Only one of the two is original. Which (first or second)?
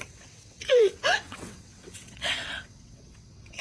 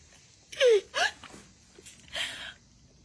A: second